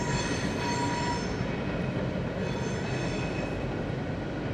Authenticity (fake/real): real